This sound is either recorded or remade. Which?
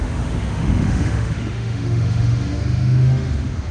remade